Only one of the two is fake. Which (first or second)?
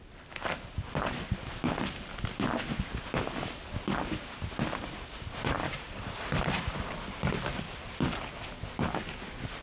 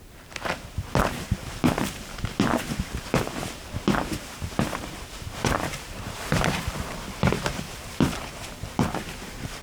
second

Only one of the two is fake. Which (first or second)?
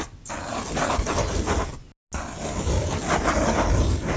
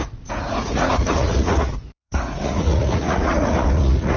second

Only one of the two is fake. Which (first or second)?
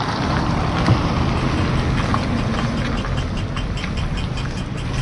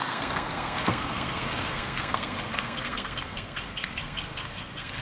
second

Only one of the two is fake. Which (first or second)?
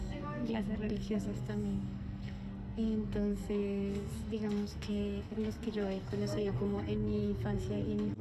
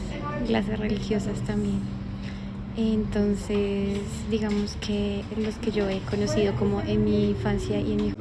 first